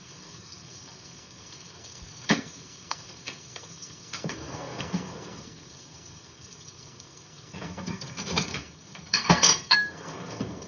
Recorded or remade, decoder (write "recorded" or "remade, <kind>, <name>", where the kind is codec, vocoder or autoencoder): remade, codec, SNAC